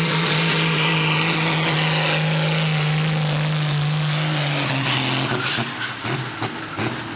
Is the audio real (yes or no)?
yes